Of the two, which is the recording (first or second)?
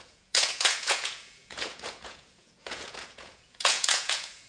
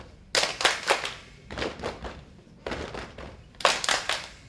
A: second